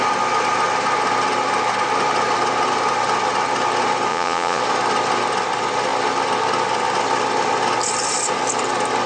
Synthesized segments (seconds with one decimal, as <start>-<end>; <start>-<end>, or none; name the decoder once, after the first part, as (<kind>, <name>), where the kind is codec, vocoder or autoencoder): 4.1-4.6 (vocoder, Vocos)